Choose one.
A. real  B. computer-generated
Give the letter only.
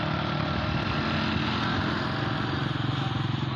A